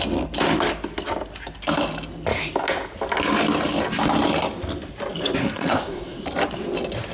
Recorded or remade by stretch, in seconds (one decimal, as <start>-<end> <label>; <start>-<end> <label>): 0.0-5.4 recorded; 5.4-6.2 remade; 6.2-7.1 recorded